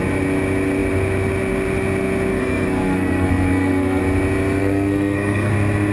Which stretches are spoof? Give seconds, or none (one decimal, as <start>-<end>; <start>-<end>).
2.3-4.0; 4.6-5.5